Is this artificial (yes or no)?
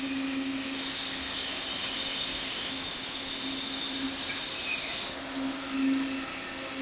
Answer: no